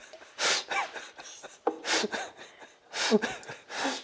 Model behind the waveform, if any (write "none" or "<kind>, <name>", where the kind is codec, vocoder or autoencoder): none